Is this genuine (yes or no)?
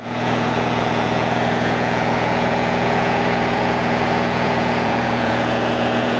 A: no